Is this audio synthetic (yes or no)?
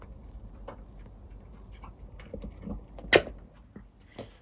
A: no